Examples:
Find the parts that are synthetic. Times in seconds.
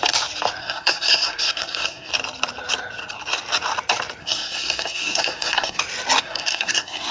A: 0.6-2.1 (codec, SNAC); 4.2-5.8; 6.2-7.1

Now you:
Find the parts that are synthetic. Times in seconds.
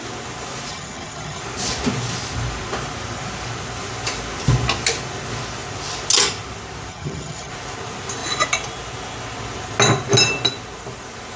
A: 0.7-1.4 (vocoder, HiFi-GAN); 6.9-7.5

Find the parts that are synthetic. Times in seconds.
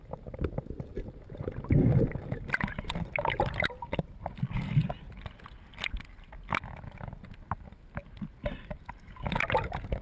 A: 8.0-8.9 (vocoder, BigVGAN v2)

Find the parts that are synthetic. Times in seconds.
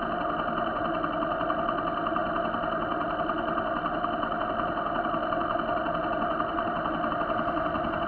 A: none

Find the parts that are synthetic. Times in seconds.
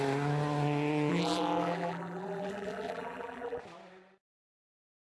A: 1.1-3.6 (vocoder, BigVGAN v2)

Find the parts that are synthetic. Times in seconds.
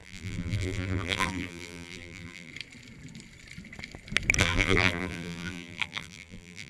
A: 0.0-2.5 (vocoder, BigVGAN v2); 4.4-6.7